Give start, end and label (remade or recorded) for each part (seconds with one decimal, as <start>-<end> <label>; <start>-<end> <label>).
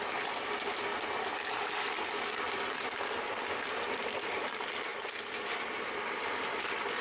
0.0-7.0 recorded